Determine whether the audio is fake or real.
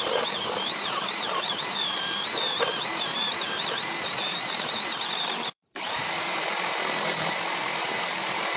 fake